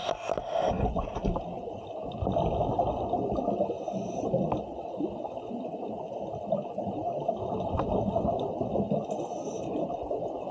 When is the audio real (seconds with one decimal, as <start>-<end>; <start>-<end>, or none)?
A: 0.0-10.5